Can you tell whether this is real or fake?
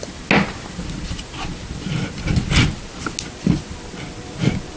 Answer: real